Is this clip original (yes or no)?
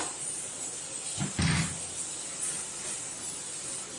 yes